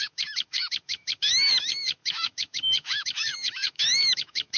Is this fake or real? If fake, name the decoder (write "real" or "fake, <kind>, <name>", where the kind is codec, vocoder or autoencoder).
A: fake, autoencoder, DAC-VAE